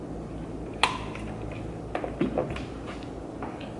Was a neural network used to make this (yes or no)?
no